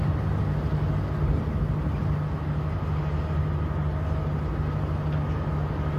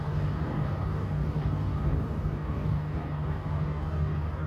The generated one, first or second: second